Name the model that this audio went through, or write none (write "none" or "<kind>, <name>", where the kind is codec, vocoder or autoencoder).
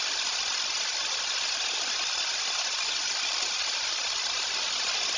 none